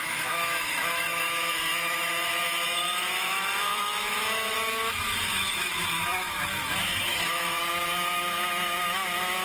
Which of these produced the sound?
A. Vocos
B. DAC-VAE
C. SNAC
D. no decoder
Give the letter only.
B